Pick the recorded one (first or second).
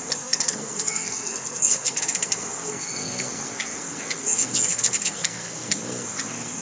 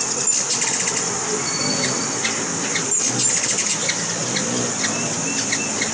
second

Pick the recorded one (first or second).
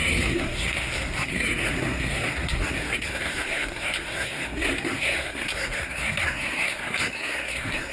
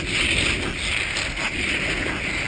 second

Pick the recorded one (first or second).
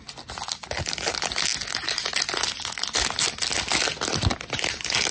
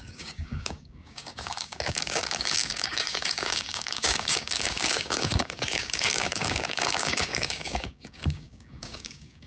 first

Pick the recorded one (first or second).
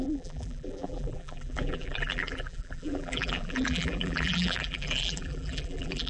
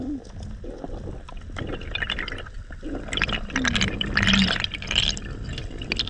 second